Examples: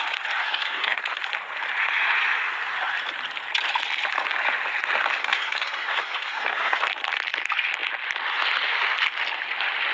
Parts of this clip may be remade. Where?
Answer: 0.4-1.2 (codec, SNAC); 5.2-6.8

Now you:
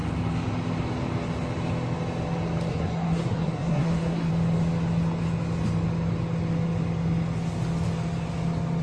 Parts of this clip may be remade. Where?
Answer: 2.7-4.3 (codec, SNAC)

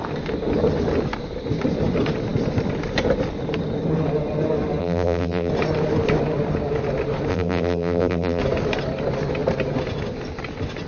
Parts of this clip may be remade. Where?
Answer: 4.8-5.5 (vocoder, BigVGAN v2); 7.3-8.4